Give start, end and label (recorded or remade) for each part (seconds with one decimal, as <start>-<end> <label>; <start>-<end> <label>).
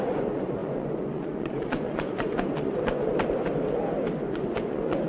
0.0-3.1 remade; 3.1-4.3 recorded; 4.3-5.1 remade